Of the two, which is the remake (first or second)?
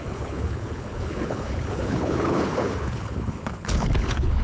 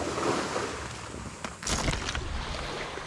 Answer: first